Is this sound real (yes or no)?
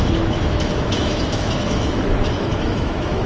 no